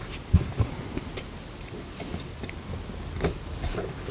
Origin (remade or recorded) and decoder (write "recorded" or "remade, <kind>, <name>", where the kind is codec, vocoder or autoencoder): recorded